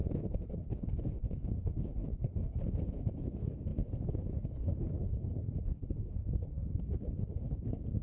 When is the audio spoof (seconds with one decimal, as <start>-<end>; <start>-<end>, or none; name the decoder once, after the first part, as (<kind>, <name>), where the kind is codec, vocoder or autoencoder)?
0.0-8.0 (codec, HILCodec)